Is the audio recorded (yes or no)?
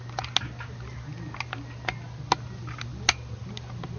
yes